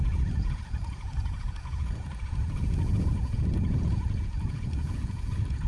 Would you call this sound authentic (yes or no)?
no